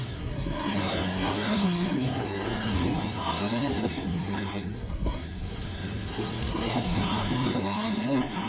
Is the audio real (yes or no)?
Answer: no